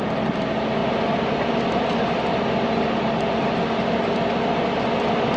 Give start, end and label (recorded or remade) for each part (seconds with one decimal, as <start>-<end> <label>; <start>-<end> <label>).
0.0-5.4 recorded